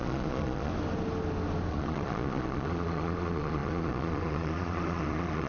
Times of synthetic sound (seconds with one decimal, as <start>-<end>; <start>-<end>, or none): 0.0-0.7; 1.7-5.5